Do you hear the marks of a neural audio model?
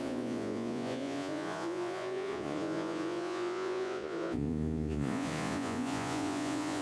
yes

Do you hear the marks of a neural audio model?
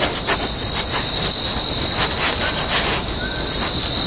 no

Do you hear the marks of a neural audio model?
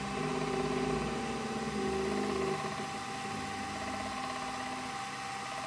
no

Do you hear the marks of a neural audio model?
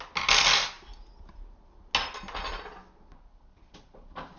no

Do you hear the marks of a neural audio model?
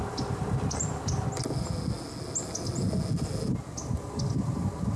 no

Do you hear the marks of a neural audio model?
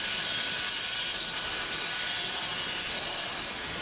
no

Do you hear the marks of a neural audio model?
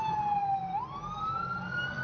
no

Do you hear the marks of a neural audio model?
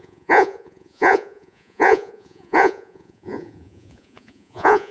yes